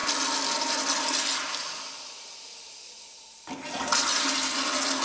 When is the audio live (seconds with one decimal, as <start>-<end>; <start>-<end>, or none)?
0.0-5.0